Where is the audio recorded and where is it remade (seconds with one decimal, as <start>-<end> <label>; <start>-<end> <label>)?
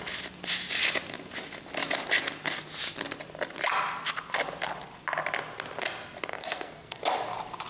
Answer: 0.0-6.3 recorded; 6.3-7.0 remade; 7.0-7.7 recorded